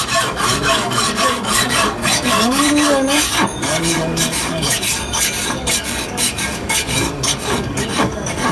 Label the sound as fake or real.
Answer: fake